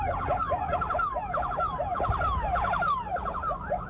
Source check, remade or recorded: recorded